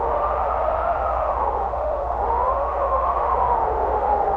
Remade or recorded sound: remade